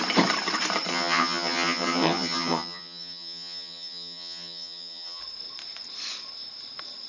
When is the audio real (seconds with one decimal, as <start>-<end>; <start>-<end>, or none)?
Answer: 0.0-0.9; 5.2-7.1